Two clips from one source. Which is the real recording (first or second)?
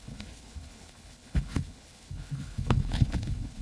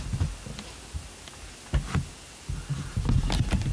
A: second